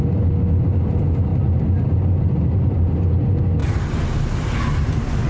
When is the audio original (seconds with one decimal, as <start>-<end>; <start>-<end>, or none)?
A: 0.0-5.3